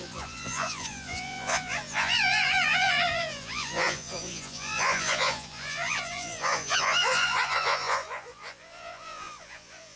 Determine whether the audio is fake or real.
fake